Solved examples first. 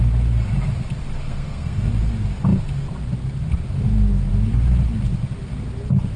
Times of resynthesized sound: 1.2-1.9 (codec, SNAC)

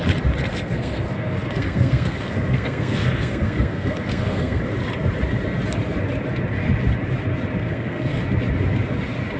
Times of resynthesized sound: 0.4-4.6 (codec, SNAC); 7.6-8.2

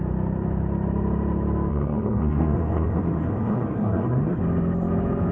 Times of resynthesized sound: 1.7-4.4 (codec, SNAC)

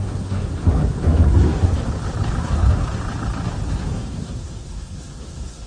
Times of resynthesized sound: 0.0-1.7 (codec, SNAC); 2.4-3.0; 3.7-5.7